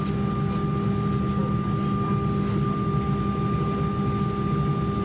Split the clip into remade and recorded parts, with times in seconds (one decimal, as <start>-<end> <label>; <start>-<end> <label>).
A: 0.0-5.0 recorded